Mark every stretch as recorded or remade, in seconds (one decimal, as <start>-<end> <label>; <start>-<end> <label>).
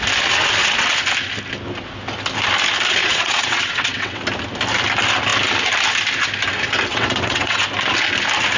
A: 0.0-3.0 recorded; 3.0-4.2 remade; 4.2-6.9 recorded; 6.9-7.6 remade; 7.6-8.6 recorded